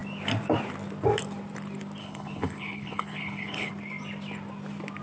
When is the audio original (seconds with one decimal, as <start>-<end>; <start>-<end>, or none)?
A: 0.0-2.0; 3.7-5.0